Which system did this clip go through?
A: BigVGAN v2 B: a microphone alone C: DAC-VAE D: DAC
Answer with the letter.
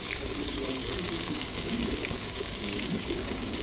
D